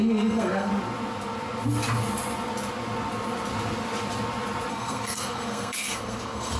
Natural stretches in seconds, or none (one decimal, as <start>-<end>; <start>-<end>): 0.7-4.7